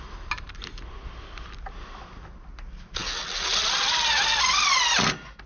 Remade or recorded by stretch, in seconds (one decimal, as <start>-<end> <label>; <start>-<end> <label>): 0.0-5.5 recorded